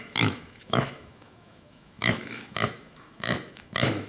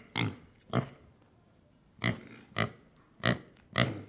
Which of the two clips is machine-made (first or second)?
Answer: first